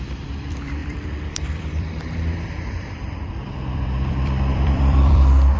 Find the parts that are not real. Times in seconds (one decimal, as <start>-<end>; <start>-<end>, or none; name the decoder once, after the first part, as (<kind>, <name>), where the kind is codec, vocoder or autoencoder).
0.0-5.6 (vocoder, BigVGAN v2)